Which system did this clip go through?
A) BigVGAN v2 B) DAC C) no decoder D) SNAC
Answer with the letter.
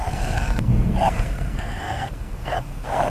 D